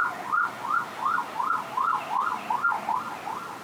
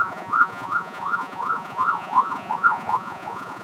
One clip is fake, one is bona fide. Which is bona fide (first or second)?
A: first